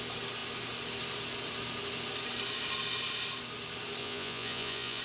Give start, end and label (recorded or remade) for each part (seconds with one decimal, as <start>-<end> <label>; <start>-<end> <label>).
0.0-4.0 recorded; 4.0-5.0 remade